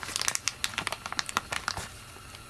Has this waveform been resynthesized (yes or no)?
no